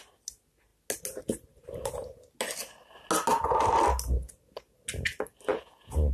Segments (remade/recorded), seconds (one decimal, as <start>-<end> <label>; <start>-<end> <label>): 0.0-5.5 recorded; 5.5-6.1 remade